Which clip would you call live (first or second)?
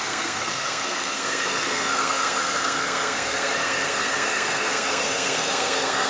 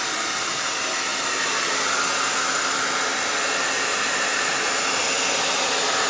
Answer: second